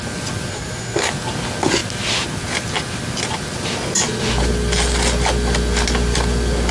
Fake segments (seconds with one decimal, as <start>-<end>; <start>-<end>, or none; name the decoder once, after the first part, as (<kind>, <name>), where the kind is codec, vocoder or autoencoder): 0.5-1.1 (codec, SNAC)